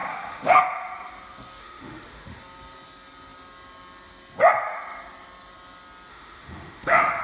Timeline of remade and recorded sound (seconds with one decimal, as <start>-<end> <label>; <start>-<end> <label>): 0.0-0.6 remade; 0.6-1.6 recorded; 1.6-2.4 remade; 2.4-6.1 recorded; 6.1-7.2 remade